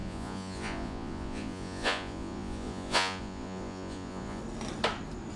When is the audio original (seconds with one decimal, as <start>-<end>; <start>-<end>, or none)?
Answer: 4.4-5.4